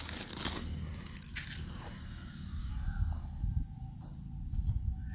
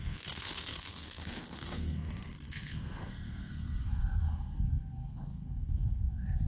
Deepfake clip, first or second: second